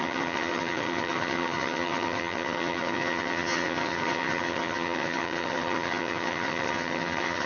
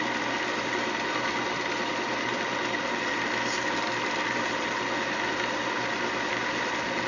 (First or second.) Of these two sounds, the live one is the second